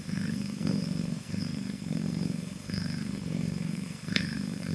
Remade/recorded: remade